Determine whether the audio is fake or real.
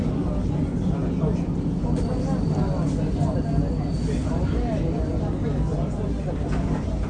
real